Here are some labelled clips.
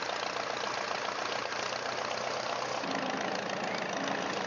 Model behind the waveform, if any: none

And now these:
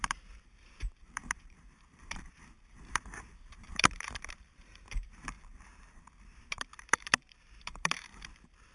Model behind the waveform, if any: vocoder, BigVGAN v2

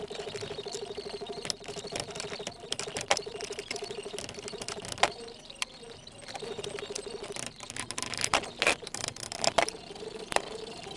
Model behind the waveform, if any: none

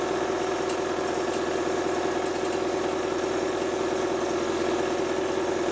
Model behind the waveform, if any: none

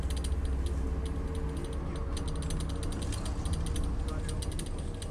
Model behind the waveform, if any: none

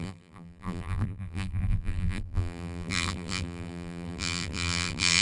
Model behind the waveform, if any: vocoder, BigVGAN v2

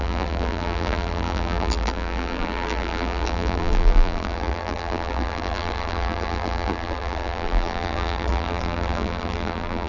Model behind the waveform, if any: vocoder, BigVGAN v2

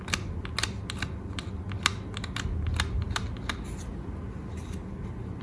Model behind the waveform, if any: none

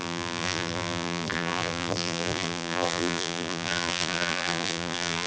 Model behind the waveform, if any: vocoder, BigVGAN v2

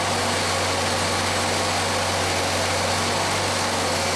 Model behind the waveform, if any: none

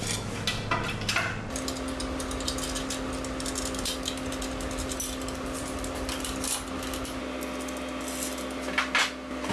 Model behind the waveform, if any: none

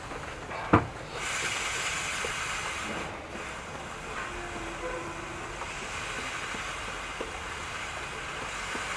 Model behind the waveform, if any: none